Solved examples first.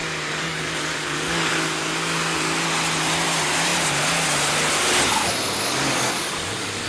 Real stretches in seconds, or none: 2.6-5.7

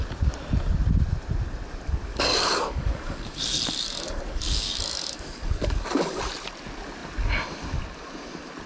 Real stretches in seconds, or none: 0.0-2.1; 6.2-8.7